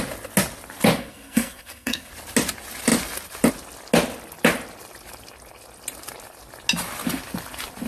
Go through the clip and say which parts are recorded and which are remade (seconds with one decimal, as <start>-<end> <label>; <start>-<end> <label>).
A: 0.0-1.0 recorded; 1.0-2.1 remade; 2.1-7.9 recorded